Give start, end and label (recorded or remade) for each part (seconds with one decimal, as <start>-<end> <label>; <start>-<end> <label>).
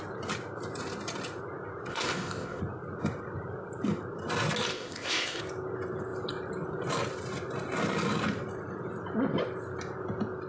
0.0-1.9 recorded; 1.9-2.6 remade; 2.6-4.7 recorded; 4.7-5.4 remade; 5.4-10.5 recorded